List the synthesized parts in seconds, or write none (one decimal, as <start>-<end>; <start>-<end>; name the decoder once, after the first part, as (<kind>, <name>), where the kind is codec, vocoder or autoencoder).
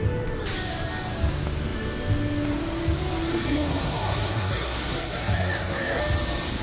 3.3-6.0 (codec, SNAC)